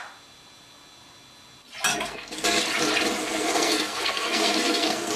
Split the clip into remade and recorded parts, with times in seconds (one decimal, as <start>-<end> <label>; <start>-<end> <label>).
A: 0.0-1.9 recorded; 1.9-2.6 remade; 2.6-3.2 recorded; 3.2-5.2 remade